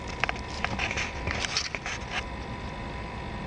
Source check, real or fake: real